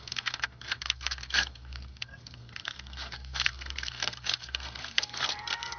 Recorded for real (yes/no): no